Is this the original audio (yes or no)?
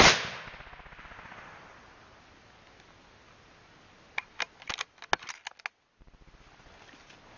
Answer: yes